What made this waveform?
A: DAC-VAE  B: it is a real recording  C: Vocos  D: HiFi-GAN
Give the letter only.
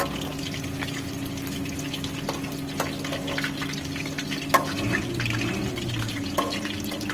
B